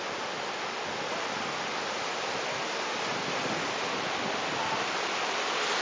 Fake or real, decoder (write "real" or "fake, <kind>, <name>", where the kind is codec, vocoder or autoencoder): real